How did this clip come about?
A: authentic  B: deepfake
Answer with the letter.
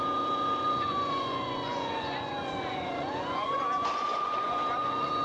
B